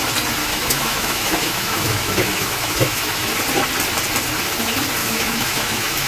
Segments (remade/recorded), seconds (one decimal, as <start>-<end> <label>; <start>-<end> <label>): 0.0-0.4 recorded; 0.4-3.3 remade; 3.3-5.0 recorded; 5.0-6.1 remade